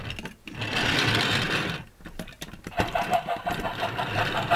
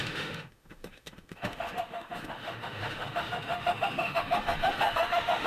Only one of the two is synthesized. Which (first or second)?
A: second